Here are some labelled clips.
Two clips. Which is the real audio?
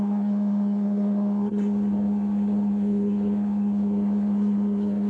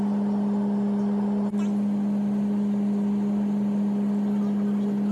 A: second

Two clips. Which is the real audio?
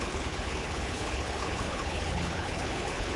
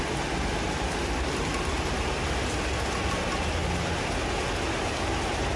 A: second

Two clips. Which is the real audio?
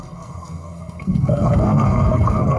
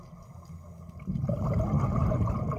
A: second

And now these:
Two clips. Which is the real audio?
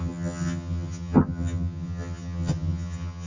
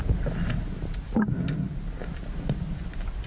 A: second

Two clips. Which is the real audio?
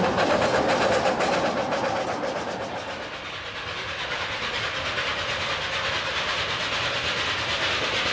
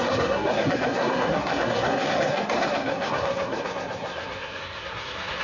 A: first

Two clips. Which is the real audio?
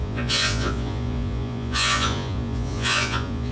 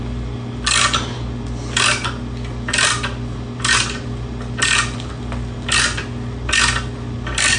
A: second